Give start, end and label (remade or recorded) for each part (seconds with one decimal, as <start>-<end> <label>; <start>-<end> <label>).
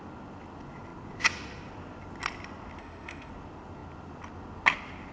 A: 0.0-2.8 recorded; 2.8-3.3 remade; 3.3-5.1 recorded